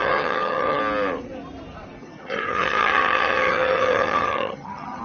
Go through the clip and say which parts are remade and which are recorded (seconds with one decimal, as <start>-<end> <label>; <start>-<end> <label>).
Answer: 0.0-0.8 remade; 0.8-2.0 recorded; 2.0-5.0 remade